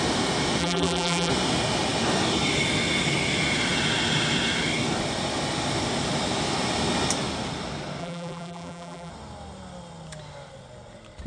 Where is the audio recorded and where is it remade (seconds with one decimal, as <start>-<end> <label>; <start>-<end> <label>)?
0.0-0.6 recorded; 0.6-1.3 remade; 1.3-8.0 recorded; 8.0-9.1 remade; 9.1-11.3 recorded